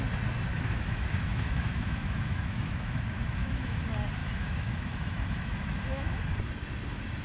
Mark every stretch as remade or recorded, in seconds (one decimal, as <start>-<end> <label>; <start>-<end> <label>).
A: 0.0-0.5 recorded; 0.5-3.8 remade; 3.8-4.2 recorded; 4.2-6.2 remade; 6.2-7.2 recorded